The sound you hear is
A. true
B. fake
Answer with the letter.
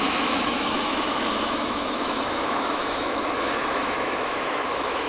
B